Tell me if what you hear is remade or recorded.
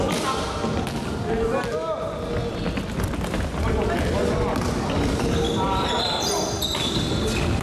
recorded